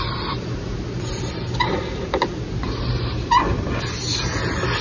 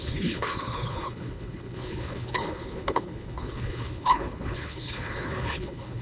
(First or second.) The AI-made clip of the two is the second